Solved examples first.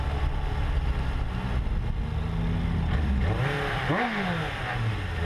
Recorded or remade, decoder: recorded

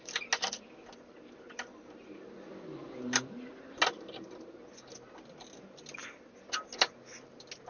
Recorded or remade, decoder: recorded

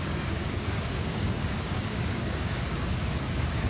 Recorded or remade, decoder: remade, codec, DAC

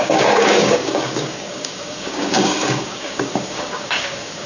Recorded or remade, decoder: remade, codec, DAC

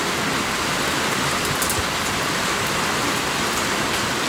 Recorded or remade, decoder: recorded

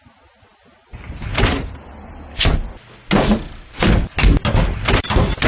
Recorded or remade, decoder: recorded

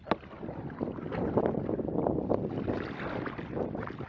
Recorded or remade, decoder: recorded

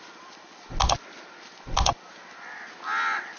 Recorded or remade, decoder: recorded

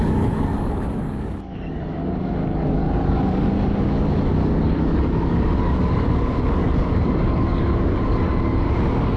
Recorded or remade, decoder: remade, codec, DAC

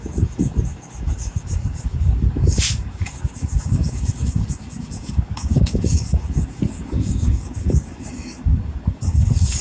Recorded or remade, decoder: remade, codec, DAC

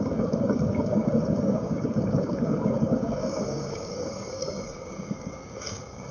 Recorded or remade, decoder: remade, codec, DAC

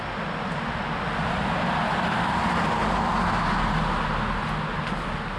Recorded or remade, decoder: recorded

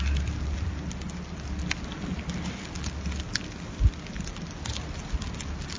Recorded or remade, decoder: recorded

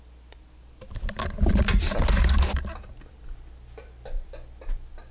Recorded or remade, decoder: recorded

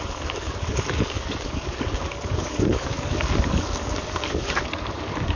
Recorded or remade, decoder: remade, codec, DAC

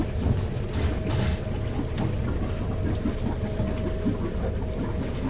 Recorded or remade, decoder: recorded